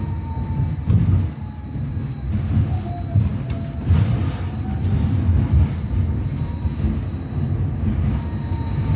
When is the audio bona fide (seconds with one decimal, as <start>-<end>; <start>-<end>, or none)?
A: 0.0-2.3; 2.9-9.0